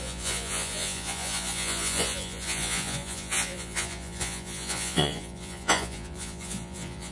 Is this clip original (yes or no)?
no